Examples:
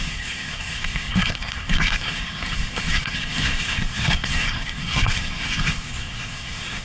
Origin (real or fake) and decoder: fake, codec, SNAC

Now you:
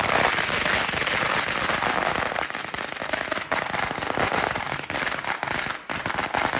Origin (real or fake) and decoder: real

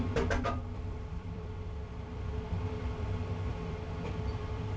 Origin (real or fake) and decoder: fake, vocoder, BigVGAN v2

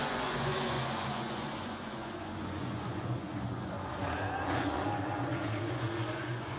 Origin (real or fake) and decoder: fake, vocoder, Vocos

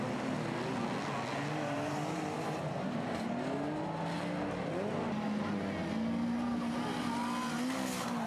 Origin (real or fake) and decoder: real